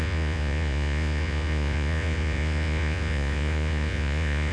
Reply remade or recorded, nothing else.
remade